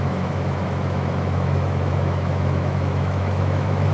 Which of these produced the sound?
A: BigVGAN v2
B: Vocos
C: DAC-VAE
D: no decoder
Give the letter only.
C